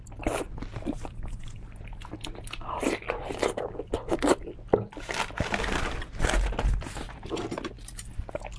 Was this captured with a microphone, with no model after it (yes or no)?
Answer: yes